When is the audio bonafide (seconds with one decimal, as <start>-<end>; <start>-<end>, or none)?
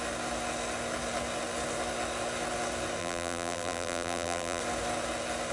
0.0-3.0; 4.6-5.5